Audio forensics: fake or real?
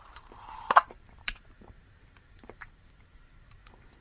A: fake